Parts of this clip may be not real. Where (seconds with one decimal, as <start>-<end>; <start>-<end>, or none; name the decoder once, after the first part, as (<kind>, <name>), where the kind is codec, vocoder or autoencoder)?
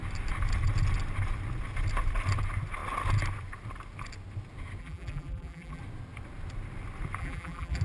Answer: 4.8-5.8 (vocoder, BigVGAN v2); 7.2-7.8